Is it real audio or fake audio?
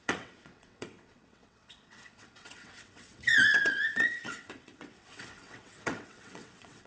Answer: fake